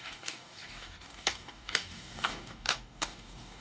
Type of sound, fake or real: fake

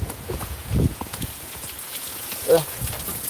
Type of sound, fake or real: fake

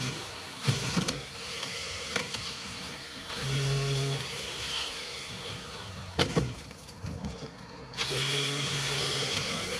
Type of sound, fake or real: fake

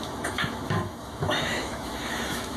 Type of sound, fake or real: fake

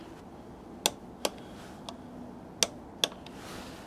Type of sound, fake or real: real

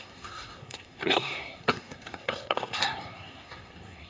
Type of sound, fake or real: fake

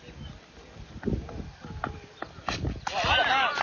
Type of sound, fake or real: real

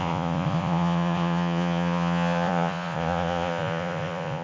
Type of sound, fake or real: fake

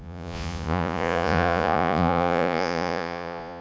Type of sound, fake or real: fake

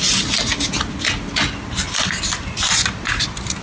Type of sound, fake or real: real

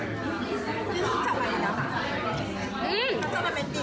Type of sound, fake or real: real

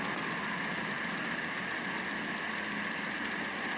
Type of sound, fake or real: real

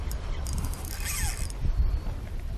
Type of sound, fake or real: real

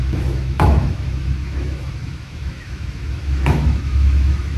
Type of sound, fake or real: fake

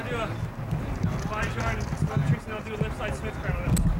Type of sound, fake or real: real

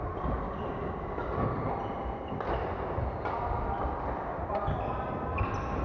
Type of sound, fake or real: real